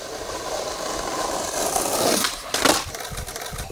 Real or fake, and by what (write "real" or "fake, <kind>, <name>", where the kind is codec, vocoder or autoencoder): real